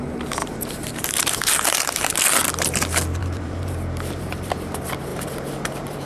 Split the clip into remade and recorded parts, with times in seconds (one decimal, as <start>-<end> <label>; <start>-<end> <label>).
0.0-0.4 recorded; 0.4-2.1 remade; 2.1-3.2 recorded; 3.2-4.5 remade; 4.5-5.1 recorded; 5.1-6.1 remade